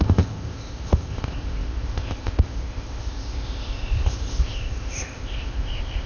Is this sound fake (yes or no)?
yes